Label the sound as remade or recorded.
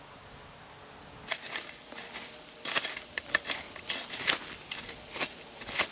recorded